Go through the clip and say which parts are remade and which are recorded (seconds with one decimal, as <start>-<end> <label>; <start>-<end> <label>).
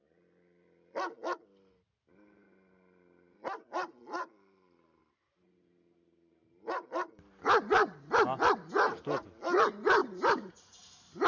0.0-10.0 recorded; 10.0-10.5 remade; 10.5-11.3 recorded